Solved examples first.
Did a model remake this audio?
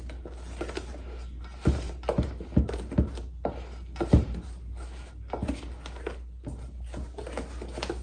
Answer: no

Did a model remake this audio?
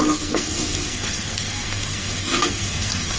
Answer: yes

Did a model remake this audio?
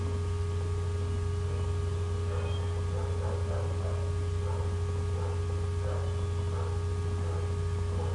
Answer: no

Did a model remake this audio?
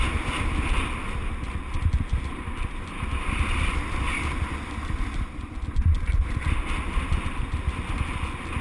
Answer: no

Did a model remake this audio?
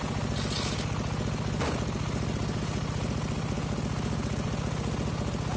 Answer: no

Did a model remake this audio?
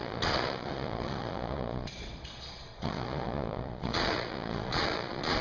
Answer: yes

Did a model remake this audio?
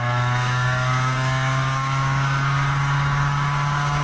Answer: yes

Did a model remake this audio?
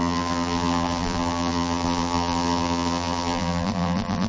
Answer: yes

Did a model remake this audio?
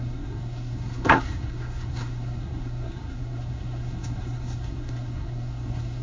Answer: yes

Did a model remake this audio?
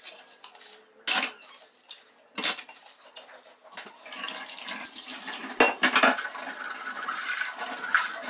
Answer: no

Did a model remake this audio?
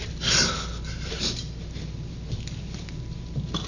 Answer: no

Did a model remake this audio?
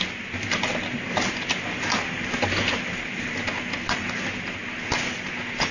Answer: no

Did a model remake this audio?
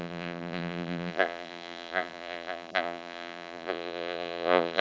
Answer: yes